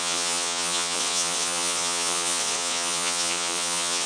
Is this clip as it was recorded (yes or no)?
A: no